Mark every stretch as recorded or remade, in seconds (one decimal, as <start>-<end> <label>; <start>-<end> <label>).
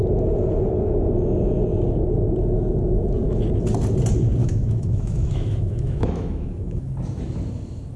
0.0-4.4 recorded; 4.4-6.9 remade; 6.9-8.0 recorded